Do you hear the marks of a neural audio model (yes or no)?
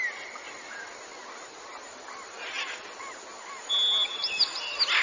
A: no